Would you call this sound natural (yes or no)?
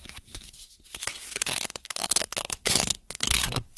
no